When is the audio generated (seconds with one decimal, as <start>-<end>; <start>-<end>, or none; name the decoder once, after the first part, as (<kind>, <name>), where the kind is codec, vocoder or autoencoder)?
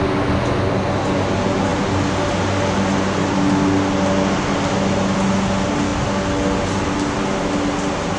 none